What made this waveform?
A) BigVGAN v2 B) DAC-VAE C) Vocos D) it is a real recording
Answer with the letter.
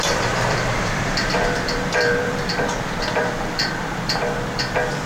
A